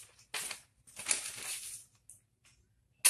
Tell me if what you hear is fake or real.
real